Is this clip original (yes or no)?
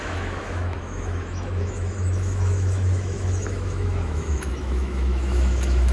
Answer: no